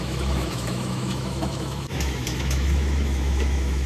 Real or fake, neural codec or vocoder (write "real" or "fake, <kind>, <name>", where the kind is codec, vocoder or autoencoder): fake, autoencoder, DAC-VAE